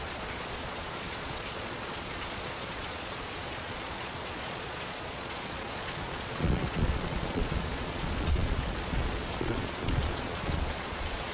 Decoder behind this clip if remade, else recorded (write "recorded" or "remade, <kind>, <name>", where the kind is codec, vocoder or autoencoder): remade, vocoder, Vocos